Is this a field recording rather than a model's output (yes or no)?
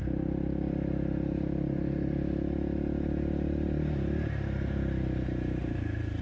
yes